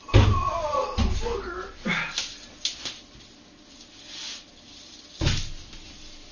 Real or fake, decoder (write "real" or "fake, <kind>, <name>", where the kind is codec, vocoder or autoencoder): real